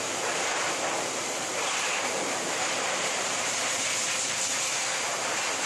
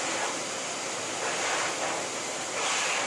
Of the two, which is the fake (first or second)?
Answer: first